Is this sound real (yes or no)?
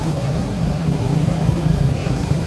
no